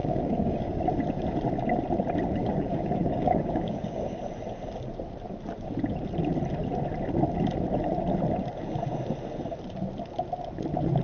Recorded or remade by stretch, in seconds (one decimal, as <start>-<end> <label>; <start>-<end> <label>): 0.0-0.8 remade; 0.8-2.4 recorded; 2.4-4.2 remade; 4.2-11.0 recorded

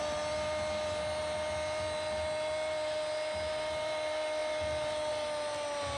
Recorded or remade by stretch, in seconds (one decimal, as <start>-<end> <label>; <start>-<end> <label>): 0.0-6.0 recorded